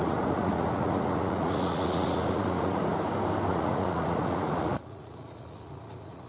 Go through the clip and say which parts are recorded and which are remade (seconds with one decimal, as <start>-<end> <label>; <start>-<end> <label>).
0.0-2.8 remade; 2.8-3.5 recorded; 3.5-6.3 remade